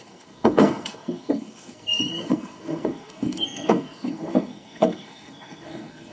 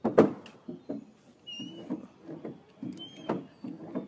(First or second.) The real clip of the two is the second